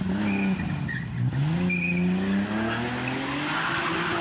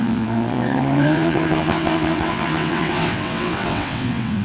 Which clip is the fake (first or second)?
second